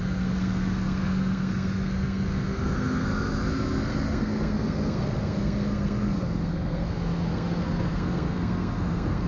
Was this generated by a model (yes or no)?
yes